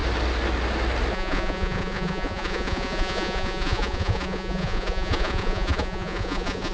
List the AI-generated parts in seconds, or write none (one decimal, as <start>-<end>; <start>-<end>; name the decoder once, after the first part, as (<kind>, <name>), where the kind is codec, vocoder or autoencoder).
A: 1.1-6.7 (vocoder, Vocos)